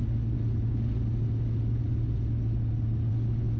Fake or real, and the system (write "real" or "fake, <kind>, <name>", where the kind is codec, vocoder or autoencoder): real